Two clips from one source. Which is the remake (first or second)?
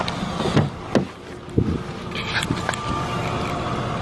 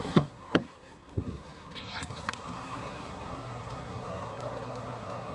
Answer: second